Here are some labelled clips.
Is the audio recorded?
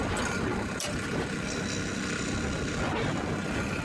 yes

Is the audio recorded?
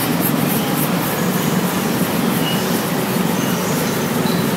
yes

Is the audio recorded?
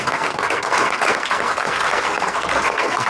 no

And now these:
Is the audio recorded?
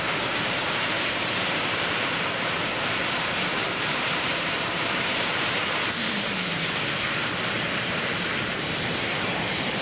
no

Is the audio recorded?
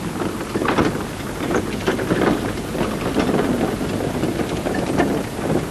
yes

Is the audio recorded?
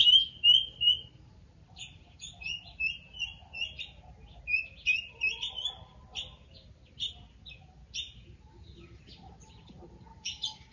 yes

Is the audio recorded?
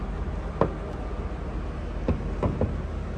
yes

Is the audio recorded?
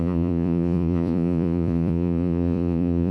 no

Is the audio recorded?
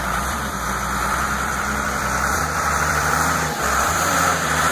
no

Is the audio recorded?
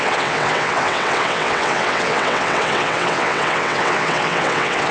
no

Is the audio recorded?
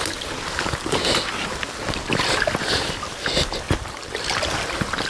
yes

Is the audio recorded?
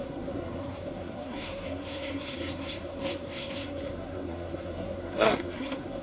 no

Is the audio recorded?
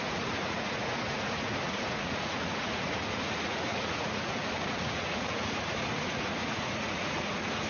no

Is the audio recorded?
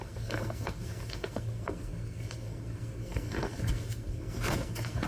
no